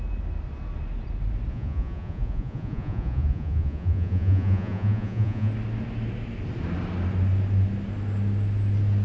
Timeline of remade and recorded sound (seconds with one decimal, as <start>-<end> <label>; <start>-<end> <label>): 0.0-1.5 recorded; 1.5-5.5 remade; 5.5-9.0 recorded